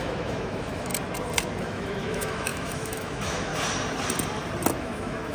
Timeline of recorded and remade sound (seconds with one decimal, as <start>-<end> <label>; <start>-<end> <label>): 0.0-0.9 remade; 0.9-1.6 recorded; 1.6-3.5 remade; 3.5-4.8 recorded; 4.8-5.3 remade